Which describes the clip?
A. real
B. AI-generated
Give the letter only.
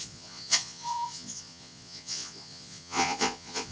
B